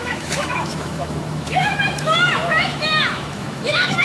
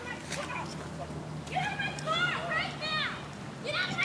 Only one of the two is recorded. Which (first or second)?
second